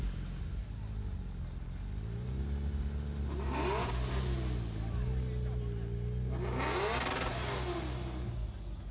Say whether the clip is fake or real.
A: real